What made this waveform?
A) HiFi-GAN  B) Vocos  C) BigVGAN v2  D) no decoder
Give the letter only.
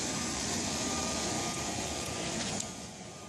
B